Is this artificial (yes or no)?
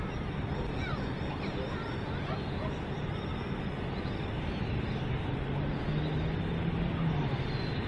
no